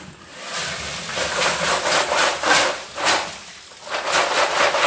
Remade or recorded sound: recorded